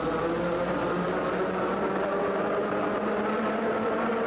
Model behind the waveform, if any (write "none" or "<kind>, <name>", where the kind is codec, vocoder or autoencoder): none